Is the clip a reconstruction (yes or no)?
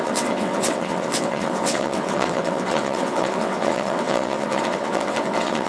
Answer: yes